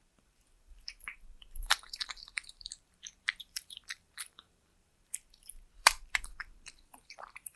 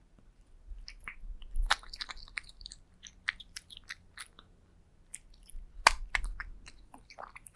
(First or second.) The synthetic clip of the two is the first